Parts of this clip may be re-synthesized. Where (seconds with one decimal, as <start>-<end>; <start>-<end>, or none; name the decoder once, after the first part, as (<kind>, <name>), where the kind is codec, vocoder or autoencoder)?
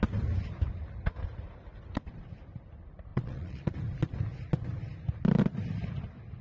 3.1-3.7 (vocoder, Vocos)